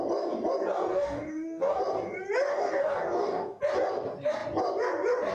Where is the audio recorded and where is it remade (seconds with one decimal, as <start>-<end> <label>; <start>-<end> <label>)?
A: 0.0-0.9 recorded; 0.9-1.8 remade; 1.8-2.5 recorded; 2.5-3.6 remade; 3.6-5.3 recorded